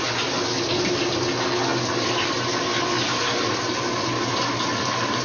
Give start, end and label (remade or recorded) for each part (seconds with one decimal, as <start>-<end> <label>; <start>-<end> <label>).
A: 0.0-5.2 recorded